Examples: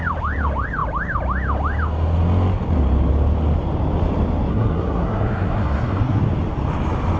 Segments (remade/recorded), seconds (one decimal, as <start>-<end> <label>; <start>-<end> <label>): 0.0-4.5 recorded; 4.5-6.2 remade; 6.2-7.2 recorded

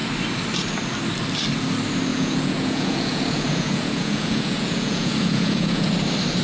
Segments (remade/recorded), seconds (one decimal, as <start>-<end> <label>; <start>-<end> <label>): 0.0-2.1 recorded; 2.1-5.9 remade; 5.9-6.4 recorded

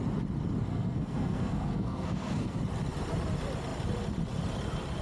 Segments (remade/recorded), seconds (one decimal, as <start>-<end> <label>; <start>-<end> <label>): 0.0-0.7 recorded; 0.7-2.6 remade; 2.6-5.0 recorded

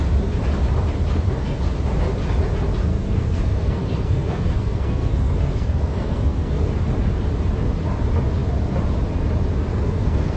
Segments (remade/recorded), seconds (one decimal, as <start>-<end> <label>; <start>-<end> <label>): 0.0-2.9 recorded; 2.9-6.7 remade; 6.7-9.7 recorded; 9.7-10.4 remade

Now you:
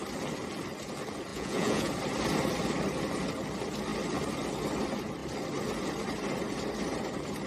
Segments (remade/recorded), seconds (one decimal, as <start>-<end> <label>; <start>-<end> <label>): 0.0-1.3 recorded; 1.3-1.9 remade; 1.9-7.5 recorded

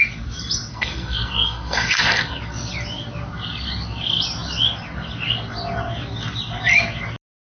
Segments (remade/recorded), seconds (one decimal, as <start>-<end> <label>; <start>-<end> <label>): 0.0-0.7 recorded; 0.7-2.4 remade; 2.4-7.5 recorded

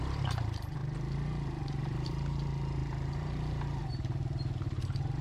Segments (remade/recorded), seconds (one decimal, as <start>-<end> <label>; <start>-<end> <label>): 0.0-0.8 remade; 0.8-1.6 recorded; 1.6-5.2 remade

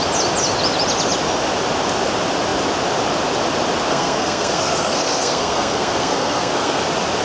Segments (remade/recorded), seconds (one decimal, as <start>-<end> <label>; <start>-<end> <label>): 0.0-3.9 recorded; 3.9-6.8 remade; 6.8-7.2 recorded